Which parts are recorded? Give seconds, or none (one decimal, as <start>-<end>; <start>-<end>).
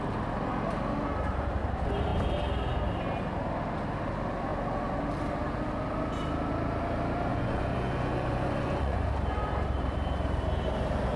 0.0-7.3; 9.1-11.2